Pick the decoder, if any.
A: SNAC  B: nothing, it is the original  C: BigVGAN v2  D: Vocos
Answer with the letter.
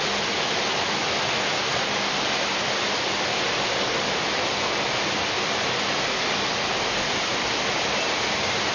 B